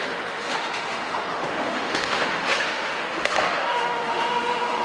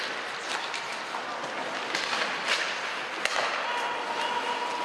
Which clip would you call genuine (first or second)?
second